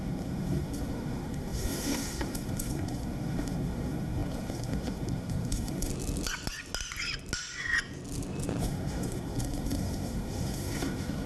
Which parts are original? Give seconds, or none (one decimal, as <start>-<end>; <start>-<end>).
5.9-8.6